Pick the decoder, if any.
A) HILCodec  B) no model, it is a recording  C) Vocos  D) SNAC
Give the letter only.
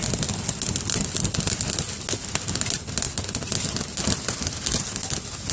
B